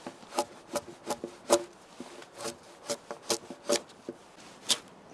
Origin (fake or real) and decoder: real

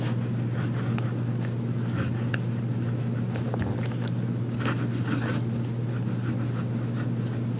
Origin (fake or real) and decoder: real